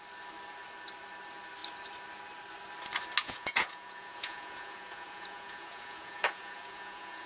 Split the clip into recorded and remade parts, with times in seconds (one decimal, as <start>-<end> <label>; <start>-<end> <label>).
0.0-3.2 recorded; 3.2-7.3 remade